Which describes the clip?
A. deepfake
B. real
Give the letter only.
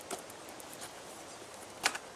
B